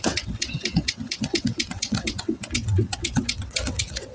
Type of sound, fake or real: fake